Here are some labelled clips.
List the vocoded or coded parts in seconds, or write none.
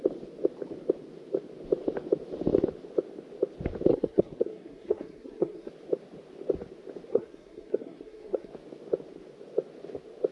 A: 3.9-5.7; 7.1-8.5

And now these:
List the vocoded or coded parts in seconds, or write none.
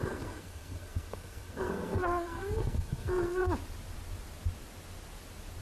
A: 0.0-3.4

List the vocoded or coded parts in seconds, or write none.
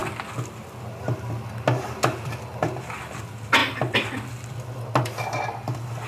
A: none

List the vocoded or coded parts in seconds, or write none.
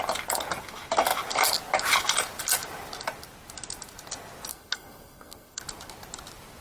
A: 4.5-5.6